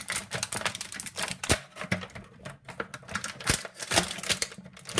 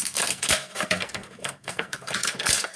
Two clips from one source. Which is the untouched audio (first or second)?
first